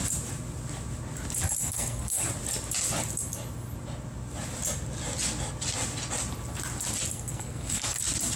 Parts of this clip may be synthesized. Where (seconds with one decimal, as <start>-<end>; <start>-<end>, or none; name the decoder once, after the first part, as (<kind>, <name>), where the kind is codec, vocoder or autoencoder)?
1.6-2.2 (codec, SNAC); 7.1-8.0